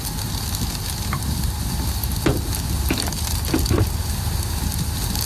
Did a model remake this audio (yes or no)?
no